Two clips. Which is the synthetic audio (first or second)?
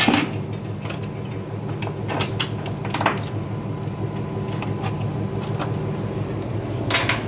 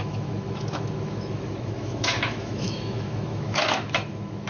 second